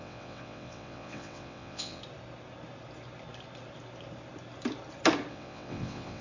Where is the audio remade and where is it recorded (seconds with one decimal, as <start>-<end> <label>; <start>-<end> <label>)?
0.0-2.0 remade; 2.0-5.3 recorded; 5.3-6.2 remade